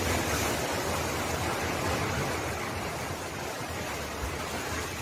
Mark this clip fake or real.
real